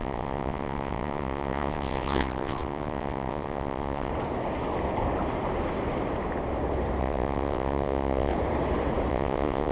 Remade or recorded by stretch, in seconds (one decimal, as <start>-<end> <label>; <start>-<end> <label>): 0.0-4.1 remade; 4.1-7.0 recorded; 7.0-8.3 remade; 8.3-9.1 recorded; 9.1-9.7 remade